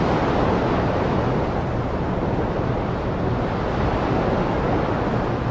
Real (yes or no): yes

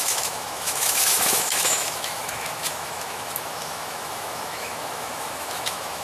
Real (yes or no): no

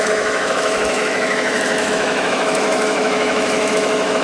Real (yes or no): no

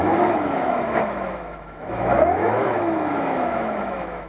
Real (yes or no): no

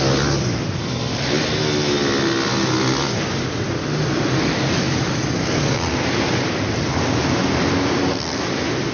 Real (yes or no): yes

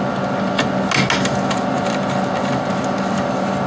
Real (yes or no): yes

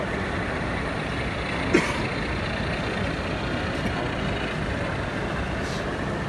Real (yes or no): yes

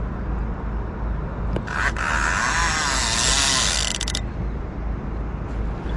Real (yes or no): yes